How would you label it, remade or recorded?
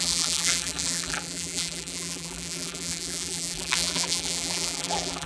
remade